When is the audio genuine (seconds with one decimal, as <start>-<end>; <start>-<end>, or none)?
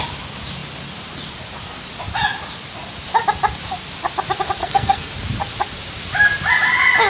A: 0.0-4.6; 5.1-7.1